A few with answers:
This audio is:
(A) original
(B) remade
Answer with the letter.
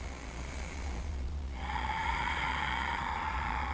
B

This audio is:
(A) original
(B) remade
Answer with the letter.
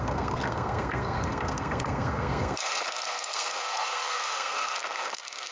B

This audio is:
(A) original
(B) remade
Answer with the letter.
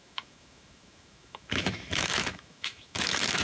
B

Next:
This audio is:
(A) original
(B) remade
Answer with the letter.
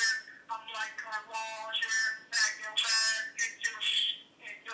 A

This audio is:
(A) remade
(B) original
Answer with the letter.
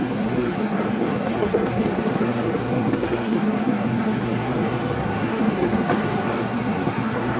A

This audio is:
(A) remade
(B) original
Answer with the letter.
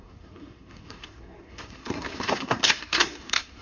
A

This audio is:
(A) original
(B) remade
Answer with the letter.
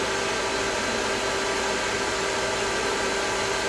A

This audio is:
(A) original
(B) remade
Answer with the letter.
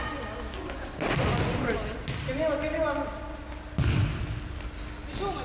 A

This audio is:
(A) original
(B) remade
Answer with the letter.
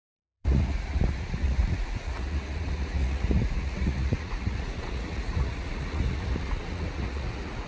B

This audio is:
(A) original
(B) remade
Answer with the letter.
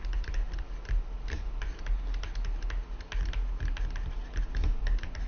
A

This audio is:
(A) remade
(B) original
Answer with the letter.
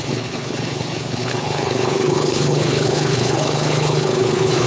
A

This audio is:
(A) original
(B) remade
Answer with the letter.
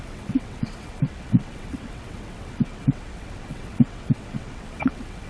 B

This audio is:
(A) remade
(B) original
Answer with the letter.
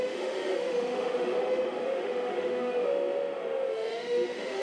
A